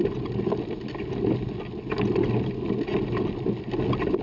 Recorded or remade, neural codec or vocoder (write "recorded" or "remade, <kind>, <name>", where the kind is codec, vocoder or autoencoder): recorded